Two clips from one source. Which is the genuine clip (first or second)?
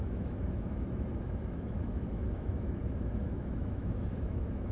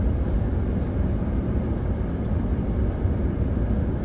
second